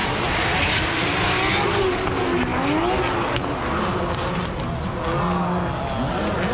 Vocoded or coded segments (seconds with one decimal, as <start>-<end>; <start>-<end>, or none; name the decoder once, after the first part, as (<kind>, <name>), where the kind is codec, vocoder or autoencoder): none